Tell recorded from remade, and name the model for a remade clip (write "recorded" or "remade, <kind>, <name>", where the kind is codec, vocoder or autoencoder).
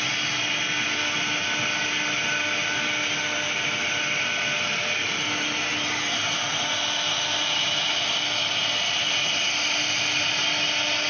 recorded